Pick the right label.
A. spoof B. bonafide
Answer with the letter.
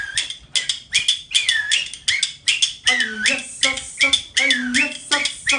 B